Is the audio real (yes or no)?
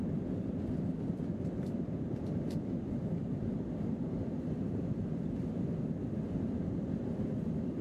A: no